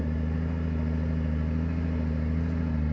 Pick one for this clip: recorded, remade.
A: recorded